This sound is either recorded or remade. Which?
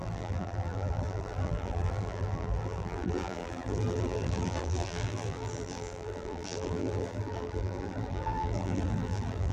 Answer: remade